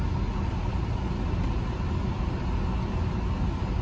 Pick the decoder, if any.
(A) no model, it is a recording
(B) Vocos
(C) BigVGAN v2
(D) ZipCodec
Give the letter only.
A